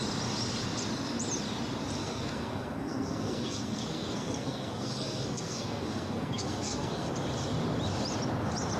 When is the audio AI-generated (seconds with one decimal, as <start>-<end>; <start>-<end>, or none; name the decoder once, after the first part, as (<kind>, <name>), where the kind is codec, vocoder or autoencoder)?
2.0-7.1 (codec, SNAC)